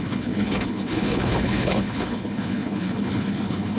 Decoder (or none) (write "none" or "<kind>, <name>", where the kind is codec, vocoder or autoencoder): codec, HILCodec